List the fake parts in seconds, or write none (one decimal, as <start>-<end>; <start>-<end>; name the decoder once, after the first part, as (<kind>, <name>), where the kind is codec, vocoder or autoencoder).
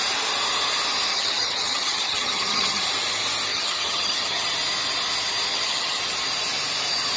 1.1-2.8 (vocoder, HiFi-GAN); 3.5-4.5; 5.5-6.0